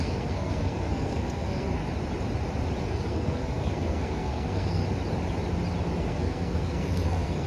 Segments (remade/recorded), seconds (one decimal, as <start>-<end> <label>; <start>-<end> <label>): 0.0-1.8 remade; 1.8-2.8 recorded; 2.8-4.8 remade; 4.8-6.0 recorded; 6.0-7.5 remade